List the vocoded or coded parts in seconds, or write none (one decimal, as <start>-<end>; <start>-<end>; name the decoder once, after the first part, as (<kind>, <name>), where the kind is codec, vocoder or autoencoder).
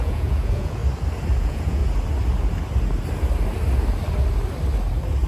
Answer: 0.0-0.8 (vocoder, Vocos); 1.4-1.8